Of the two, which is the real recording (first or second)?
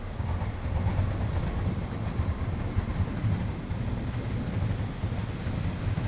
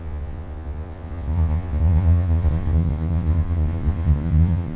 first